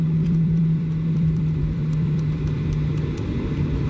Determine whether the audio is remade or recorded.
remade